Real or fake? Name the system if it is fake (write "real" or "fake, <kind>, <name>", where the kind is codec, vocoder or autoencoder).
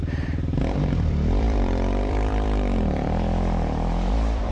fake, vocoder, BigVGAN v2